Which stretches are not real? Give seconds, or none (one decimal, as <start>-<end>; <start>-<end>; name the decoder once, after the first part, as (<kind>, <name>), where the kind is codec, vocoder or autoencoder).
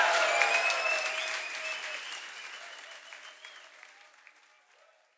none